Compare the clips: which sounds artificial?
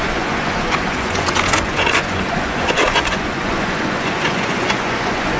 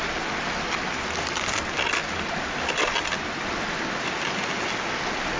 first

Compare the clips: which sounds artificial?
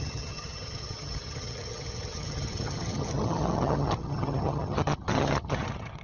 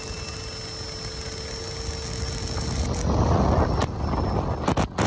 first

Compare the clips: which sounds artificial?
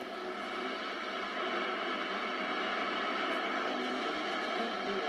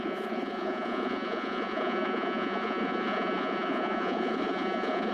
second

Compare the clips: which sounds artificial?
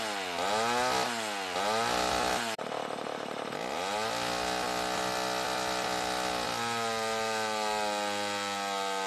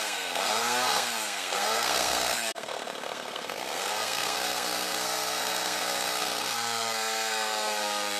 second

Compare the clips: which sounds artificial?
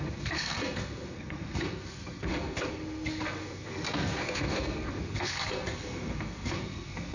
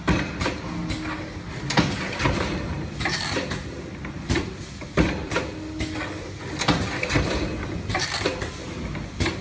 first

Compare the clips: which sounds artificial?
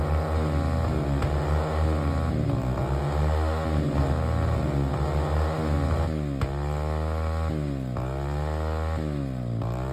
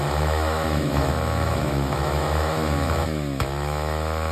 second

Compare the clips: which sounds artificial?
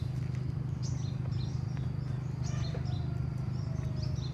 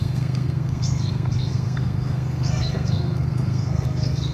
second